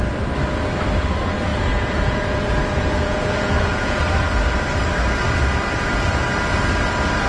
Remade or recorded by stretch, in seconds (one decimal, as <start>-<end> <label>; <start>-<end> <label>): 0.0-1.5 recorded; 1.5-4.0 remade; 4.0-7.3 recorded